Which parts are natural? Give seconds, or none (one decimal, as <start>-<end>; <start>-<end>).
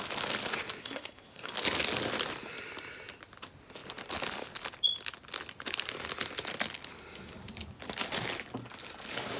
0.0-0.8; 1.5-9.4